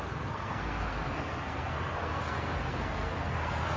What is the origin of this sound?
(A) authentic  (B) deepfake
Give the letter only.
B